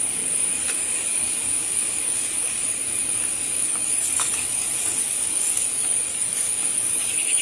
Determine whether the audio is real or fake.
fake